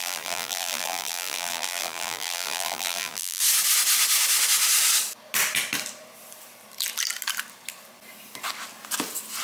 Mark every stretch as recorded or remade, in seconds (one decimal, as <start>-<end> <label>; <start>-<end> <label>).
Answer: 0.0-3.4 remade; 3.4-9.4 recorded